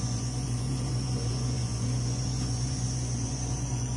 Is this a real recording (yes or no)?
no